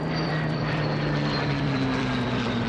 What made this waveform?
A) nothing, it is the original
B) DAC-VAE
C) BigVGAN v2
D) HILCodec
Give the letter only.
C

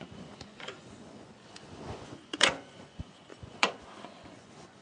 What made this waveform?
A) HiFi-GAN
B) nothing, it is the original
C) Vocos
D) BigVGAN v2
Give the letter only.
C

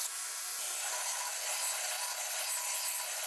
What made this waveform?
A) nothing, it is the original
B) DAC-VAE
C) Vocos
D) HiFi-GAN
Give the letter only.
A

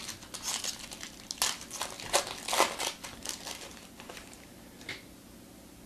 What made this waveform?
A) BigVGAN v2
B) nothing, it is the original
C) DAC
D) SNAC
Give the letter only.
B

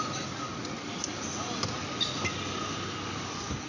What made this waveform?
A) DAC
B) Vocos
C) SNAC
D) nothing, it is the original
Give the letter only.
D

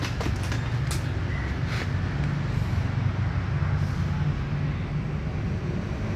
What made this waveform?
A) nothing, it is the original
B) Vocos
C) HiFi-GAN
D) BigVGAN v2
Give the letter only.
A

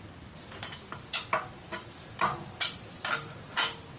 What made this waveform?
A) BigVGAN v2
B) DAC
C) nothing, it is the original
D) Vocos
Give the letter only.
C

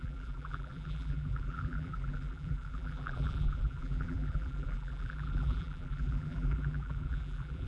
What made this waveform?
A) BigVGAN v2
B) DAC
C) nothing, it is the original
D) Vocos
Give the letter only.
A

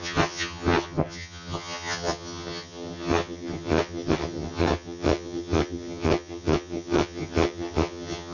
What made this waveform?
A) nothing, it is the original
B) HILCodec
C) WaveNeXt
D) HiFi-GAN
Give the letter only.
D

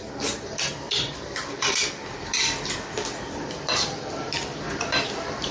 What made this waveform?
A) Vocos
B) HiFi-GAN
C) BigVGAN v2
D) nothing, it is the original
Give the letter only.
C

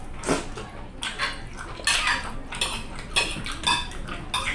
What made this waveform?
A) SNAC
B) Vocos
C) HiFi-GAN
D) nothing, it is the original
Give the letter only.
D